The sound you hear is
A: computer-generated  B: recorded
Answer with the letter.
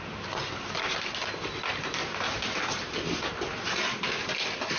B